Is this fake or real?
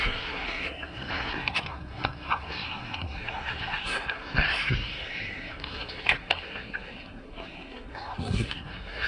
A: fake